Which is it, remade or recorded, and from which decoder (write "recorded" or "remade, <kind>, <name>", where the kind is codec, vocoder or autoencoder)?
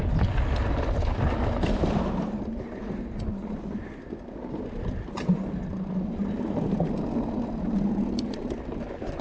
recorded